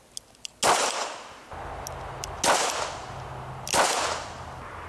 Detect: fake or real real